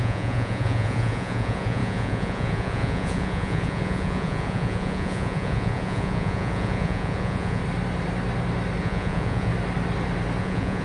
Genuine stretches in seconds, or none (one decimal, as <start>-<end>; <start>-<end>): 7.6-8.8; 9.5-10.4